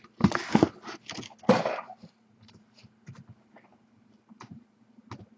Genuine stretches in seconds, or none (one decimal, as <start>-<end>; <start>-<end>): 0.0-1.6; 4.8-5.4